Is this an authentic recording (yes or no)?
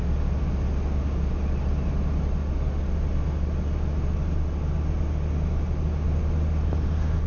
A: yes